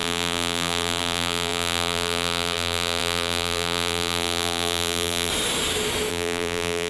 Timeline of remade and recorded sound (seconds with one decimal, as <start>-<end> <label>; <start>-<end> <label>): 0.0-5.3 remade; 5.3-6.1 recorded; 6.1-6.9 remade